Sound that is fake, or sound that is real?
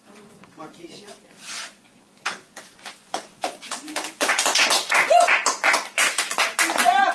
fake